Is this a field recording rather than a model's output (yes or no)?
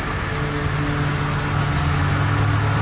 yes